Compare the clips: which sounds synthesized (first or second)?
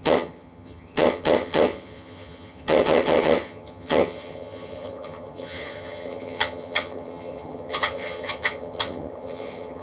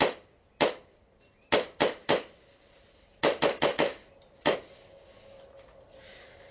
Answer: first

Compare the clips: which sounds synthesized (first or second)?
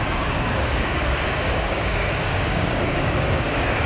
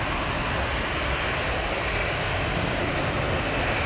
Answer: first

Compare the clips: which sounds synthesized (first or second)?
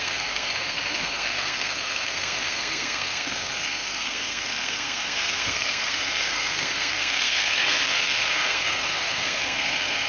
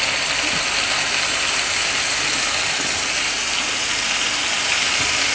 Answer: first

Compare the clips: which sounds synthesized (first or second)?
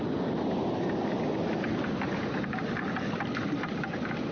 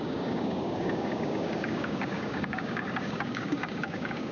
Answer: second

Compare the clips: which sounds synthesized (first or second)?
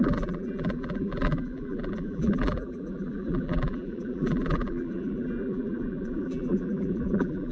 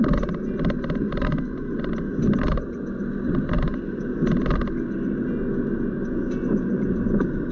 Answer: first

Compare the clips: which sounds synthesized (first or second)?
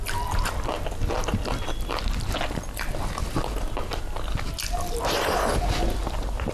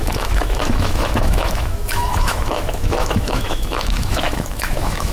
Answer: second